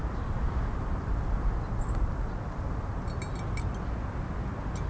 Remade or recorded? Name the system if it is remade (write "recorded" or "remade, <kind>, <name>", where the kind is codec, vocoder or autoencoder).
recorded